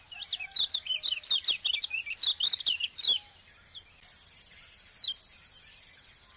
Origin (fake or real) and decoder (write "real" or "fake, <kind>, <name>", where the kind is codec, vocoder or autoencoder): real